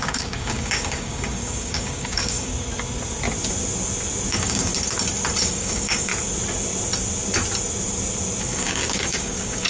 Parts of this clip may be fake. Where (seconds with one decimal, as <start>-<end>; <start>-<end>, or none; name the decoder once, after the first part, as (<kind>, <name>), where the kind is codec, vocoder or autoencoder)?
0.0-2.5 (codec, DAC); 4.3-4.7; 5.4-6.1; 8.4-9.7